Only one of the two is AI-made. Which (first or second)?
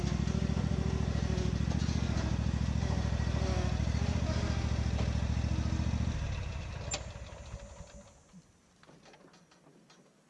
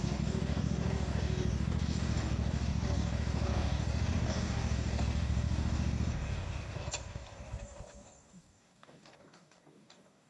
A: second